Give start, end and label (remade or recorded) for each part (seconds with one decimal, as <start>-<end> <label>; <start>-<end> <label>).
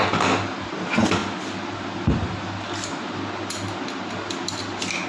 0.0-5.1 recorded